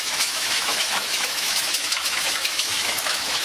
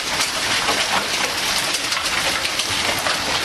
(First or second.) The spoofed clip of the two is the first